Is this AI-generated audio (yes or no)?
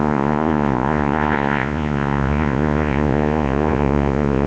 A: yes